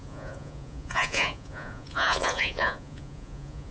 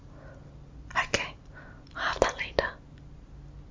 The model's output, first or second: first